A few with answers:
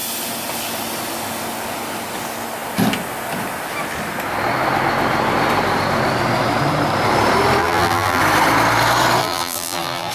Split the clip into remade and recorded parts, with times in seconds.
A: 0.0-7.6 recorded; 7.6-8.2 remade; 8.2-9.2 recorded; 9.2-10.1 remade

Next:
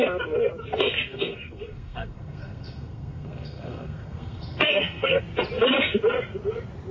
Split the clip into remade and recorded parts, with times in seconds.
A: 0.0-1.1 recorded; 1.1-5.2 remade; 5.2-6.9 recorded